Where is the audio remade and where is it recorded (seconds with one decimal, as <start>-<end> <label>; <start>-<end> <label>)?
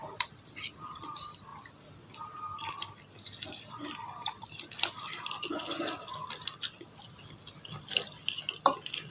0.0-1.5 remade; 1.5-3.5 recorded; 3.5-9.1 remade